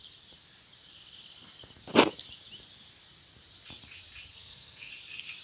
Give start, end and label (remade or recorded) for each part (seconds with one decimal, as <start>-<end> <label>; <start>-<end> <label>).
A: 0.0-4.3 recorded; 4.3-4.9 remade; 4.9-5.4 recorded